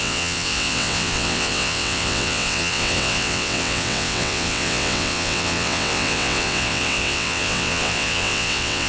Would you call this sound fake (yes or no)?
yes